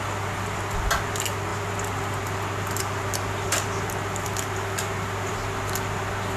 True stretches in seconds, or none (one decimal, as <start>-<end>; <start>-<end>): 0.0-6.4

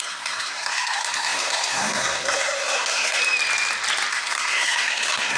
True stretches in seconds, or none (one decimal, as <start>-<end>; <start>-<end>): 3.2-4.1

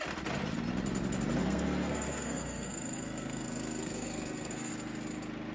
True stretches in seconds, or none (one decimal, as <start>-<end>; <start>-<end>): 0.0-1.4; 4.7-5.5